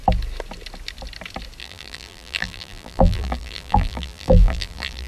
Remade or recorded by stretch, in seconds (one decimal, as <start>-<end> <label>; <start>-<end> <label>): 0.0-1.6 recorded; 1.6-5.1 remade